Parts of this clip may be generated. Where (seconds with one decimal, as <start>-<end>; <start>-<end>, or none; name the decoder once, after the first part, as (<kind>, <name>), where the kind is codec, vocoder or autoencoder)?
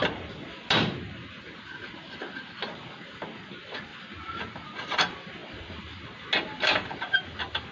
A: none